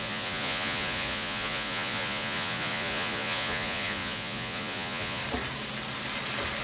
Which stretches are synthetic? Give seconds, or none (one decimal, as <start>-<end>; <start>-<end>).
0.0-5.2